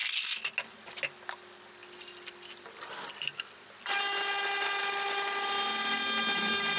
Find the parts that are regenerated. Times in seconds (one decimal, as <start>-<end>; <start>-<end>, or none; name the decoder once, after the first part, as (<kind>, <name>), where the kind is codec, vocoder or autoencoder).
none